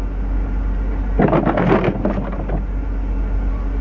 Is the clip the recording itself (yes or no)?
yes